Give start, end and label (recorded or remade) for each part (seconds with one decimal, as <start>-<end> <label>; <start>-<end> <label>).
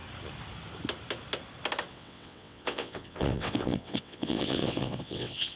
0.0-1.9 recorded; 1.9-5.6 remade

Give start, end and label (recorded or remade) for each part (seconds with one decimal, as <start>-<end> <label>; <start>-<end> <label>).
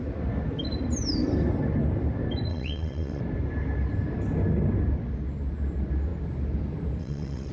0.0-2.5 recorded; 2.5-3.2 remade; 3.2-7.0 recorded; 7.0-7.5 remade